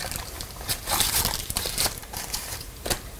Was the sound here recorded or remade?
remade